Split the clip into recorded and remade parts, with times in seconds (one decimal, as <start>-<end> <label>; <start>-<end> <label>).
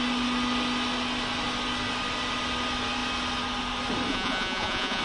0.0-4.1 recorded; 4.1-5.0 remade